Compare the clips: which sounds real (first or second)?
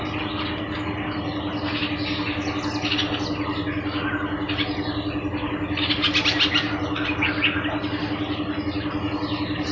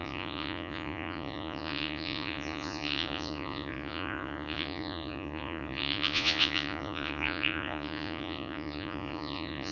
first